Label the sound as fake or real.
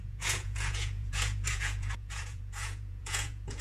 fake